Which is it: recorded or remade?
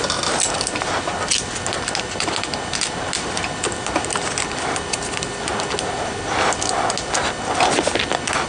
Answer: recorded